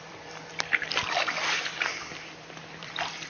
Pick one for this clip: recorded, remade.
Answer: remade